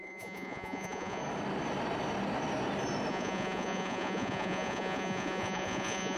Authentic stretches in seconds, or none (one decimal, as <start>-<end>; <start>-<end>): 1.2-3.1